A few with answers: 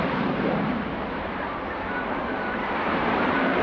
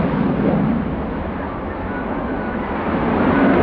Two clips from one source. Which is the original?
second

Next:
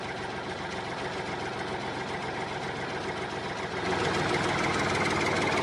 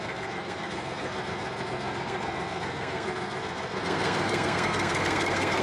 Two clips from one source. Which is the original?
first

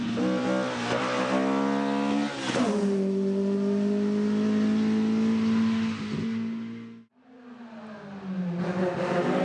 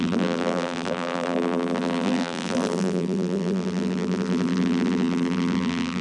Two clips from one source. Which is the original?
first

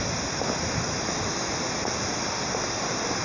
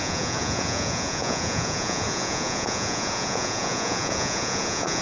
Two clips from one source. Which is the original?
first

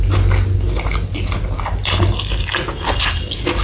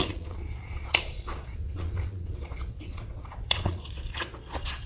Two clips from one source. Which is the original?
first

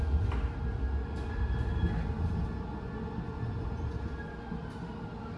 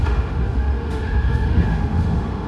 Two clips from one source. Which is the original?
first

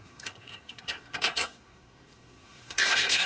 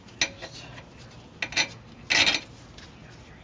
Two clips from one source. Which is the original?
second